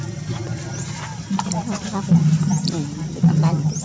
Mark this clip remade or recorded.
recorded